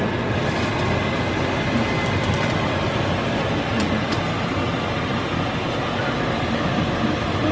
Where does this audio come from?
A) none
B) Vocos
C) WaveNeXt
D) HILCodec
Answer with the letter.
A